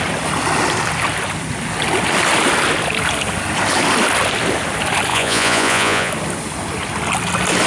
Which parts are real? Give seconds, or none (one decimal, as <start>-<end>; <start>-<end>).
0.0-5.1; 6.1-7.7